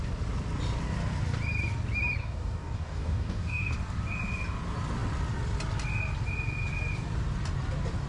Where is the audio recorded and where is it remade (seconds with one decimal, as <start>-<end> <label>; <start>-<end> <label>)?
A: 0.0-2.2 recorded; 2.2-3.7 remade; 3.7-8.1 recorded